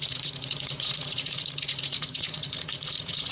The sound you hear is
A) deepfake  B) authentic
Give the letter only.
A